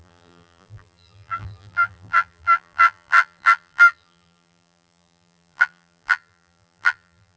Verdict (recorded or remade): remade